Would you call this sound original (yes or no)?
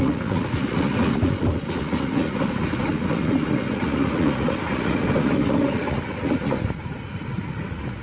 no